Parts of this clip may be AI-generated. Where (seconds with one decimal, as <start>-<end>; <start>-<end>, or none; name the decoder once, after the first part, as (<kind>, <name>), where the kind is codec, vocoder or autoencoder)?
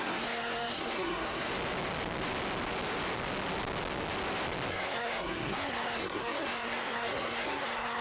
0.0-1.5 (codec, SNAC); 4.7-8.0